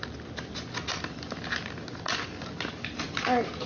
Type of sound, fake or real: real